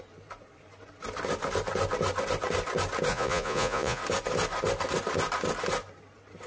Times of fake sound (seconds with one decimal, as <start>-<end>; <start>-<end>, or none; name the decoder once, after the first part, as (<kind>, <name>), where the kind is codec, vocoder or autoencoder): 3.1-4.0 (vocoder, Vocos)